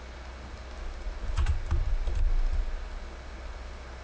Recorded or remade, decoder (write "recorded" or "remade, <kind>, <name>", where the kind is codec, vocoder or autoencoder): recorded